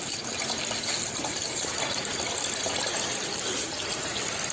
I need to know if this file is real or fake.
real